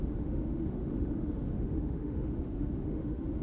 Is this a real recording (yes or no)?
no